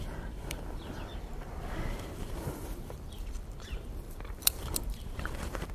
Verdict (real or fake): fake